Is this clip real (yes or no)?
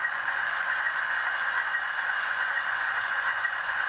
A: no